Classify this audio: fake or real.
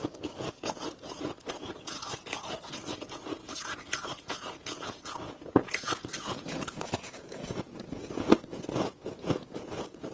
fake